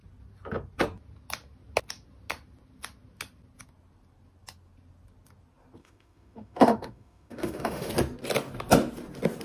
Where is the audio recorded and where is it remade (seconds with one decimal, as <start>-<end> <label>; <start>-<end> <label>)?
0.0-5.8 recorded; 5.8-7.9 remade; 7.9-9.4 recorded